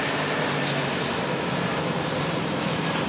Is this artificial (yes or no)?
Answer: no